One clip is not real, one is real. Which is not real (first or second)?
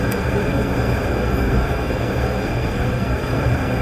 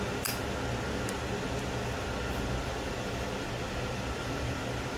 first